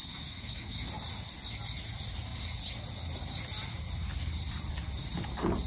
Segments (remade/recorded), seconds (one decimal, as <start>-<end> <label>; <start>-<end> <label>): 0.0-0.9 remade; 0.9-5.7 recorded